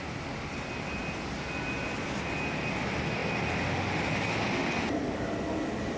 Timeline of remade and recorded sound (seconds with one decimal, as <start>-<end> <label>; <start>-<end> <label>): 0.0-6.0 recorded